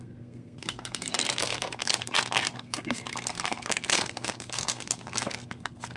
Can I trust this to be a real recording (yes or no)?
no